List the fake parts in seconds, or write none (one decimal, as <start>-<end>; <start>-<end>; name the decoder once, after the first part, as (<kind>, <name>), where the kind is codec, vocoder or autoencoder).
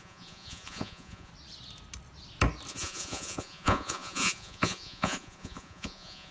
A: 0.0-1.3 (vocoder, Vocos); 2.7-6.3